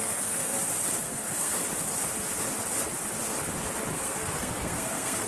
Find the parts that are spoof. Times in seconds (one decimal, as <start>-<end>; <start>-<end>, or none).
0.0-0.5; 1.0-1.6; 3.9-5.3